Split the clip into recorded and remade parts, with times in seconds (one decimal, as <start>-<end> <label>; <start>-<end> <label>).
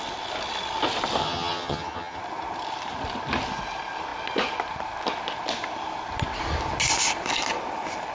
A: 0.0-1.2 recorded; 1.2-2.2 remade; 2.2-8.1 recorded